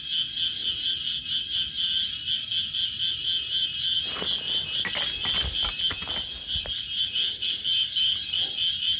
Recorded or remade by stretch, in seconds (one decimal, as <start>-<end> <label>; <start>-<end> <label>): 0.0-9.0 recorded